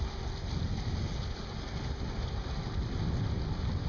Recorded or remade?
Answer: recorded